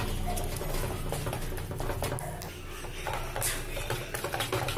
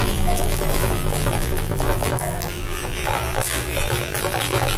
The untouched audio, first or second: first